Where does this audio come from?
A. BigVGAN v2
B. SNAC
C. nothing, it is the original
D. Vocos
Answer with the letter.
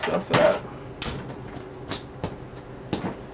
C